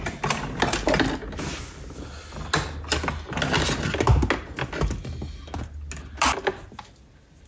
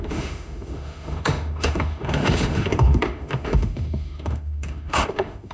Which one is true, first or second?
first